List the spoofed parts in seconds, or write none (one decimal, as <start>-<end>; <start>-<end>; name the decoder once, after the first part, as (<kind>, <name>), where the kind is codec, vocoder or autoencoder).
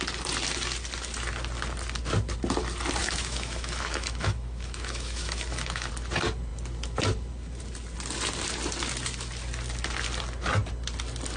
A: 3.0-5.9 (autoencoder, DAC-VAE)